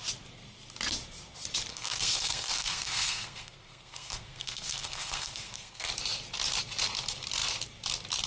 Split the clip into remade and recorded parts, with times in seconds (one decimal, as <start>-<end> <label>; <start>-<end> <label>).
0.0-1.7 recorded; 1.7-5.9 remade; 5.9-8.3 recorded